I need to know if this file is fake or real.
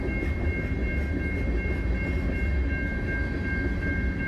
real